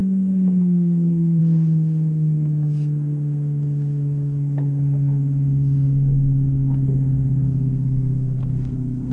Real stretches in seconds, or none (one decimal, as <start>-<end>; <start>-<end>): none